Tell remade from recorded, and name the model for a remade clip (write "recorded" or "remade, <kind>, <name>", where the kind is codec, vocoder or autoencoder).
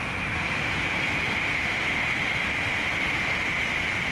recorded